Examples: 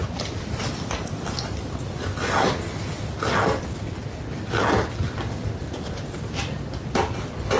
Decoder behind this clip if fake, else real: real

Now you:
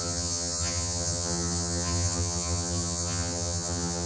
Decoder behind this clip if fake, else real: fake, vocoder, HiFi-GAN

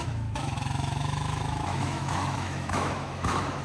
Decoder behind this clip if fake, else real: fake, autoencoder, DAC-VAE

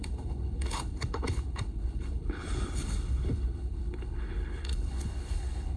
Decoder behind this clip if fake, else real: fake, codec, HILCodec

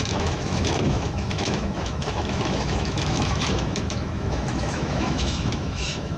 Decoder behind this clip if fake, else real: fake, autoencoder, DAC-VAE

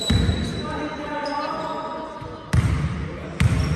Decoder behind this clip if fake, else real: real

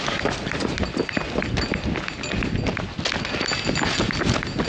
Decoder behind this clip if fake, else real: real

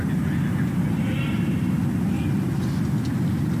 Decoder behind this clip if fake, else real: real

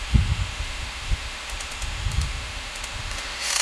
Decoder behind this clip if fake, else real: fake, autoencoder, DAC-VAE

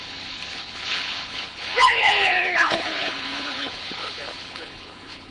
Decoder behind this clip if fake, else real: fake, codec, HILCodec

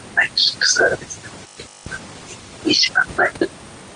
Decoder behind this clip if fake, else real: real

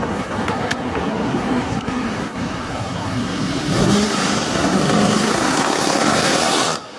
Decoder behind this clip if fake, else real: fake, codec, SNAC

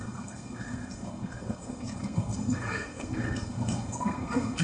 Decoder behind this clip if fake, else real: fake, codec, SNAC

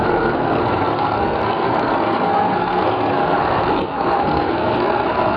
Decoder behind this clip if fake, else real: fake, codec, SNAC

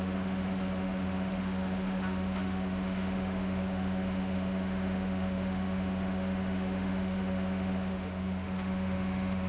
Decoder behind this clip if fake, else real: fake, autoencoder, DAC-VAE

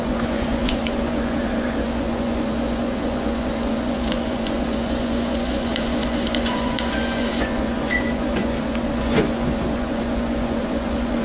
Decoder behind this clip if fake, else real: fake, vocoder, Vocos